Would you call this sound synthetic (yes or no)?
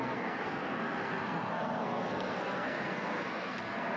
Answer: yes